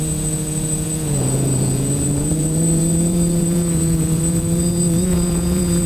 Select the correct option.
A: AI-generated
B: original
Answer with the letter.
A